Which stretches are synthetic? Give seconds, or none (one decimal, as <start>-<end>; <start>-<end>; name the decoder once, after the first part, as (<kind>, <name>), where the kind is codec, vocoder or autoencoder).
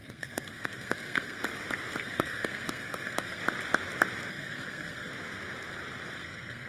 0.0-1.4 (codec, SNAC); 2.0-3.4; 4.3-5.1; 6.2-6.7